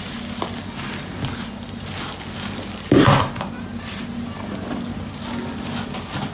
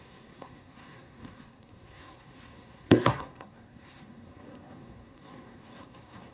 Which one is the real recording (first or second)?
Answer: first